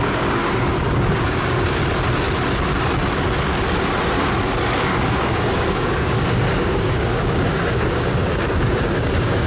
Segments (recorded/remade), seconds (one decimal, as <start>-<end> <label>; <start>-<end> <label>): 0.0-1.8 remade; 1.8-4.8 recorded; 4.8-9.5 remade